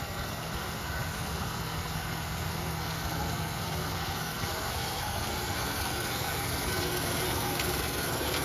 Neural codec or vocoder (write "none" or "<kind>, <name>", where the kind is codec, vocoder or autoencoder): codec, SNAC